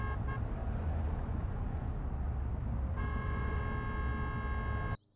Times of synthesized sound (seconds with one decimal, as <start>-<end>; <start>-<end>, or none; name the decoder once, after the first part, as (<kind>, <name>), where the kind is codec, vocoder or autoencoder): 0.6-1.9 (vocoder, Vocos); 2.9-3.6